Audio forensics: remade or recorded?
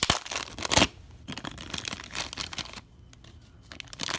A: recorded